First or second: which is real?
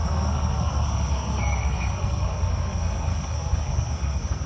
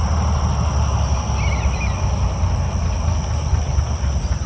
second